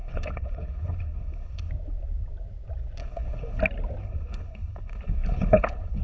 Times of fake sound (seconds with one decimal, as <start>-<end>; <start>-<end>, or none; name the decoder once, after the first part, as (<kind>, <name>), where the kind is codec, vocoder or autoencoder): 0.0-1.7 (codec, HILCodec); 3.0-3.6; 4.0-6.0